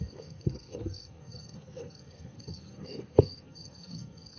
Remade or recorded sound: remade